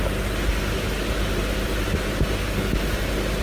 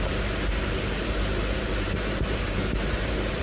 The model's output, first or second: second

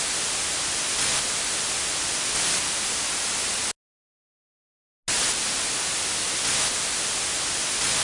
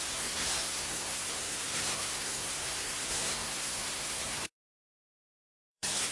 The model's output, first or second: second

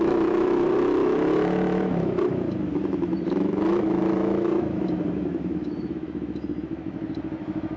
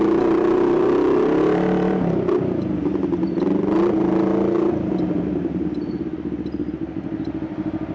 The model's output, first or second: first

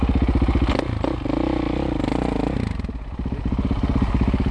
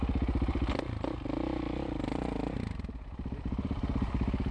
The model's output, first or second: second